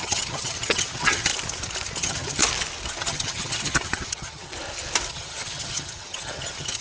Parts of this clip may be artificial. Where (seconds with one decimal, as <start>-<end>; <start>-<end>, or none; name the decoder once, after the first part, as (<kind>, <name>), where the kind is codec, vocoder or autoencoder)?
0.0-1.3 (vocoder, HiFi-GAN); 2.0-2.4; 3.0-4.5; 5.1-6.8